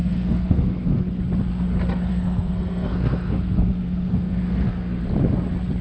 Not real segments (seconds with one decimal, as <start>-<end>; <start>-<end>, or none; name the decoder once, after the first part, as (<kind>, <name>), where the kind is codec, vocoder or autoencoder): 0.0-1.2 (codec, SNAC); 2.1-5.0